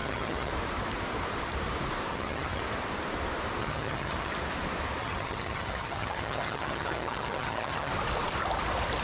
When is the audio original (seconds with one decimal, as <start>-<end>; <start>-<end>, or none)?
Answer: 0.5-2.1; 2.6-3.6; 4.3-5.0; 7.9-9.0